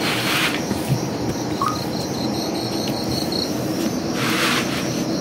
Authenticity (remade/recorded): remade